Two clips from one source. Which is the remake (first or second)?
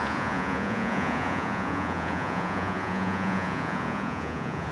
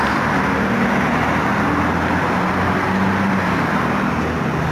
first